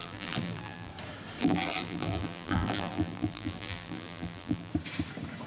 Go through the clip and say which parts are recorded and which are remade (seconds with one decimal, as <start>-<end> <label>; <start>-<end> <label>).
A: 0.0-0.9 remade; 0.9-1.4 recorded; 1.4-4.7 remade; 4.7-5.5 recorded